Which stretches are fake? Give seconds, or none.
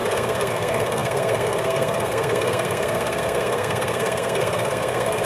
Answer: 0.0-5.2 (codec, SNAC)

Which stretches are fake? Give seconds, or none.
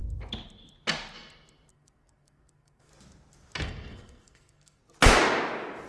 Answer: 1.7-2.9 (codec, SNAC); 3.6-4.8